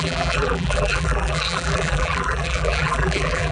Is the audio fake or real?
fake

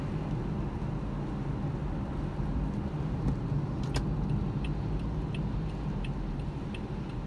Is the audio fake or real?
real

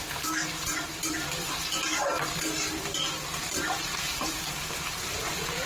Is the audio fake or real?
fake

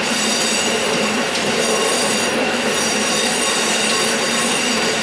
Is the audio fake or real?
fake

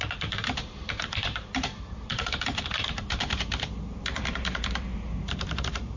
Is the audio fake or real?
fake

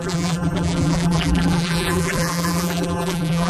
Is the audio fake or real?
fake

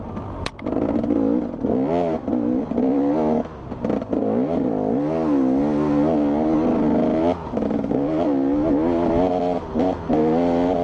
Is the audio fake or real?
real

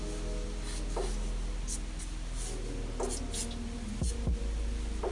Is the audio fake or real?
real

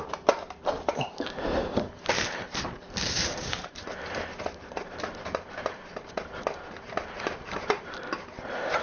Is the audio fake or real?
fake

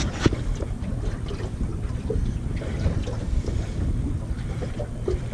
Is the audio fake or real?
real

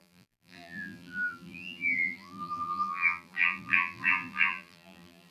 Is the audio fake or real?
fake